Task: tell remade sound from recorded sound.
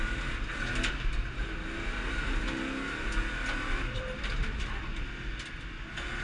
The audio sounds recorded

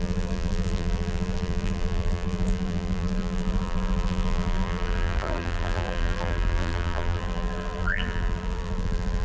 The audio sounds remade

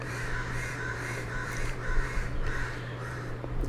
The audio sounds remade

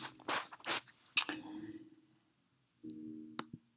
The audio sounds recorded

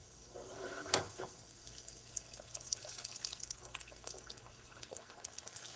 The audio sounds remade